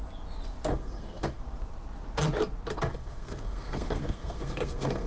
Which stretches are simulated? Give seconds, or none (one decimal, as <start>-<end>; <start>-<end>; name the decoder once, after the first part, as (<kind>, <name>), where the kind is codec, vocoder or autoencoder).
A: 0.7-1.4 (codec, SNAC); 2.9-5.1